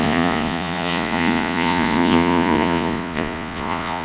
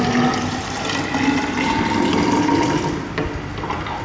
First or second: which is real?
second